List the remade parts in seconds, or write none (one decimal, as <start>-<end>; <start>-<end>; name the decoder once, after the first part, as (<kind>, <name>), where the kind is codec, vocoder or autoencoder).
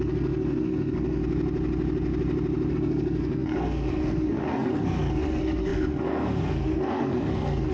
0.0-1.2 (codec, SNAC); 2.7-7.7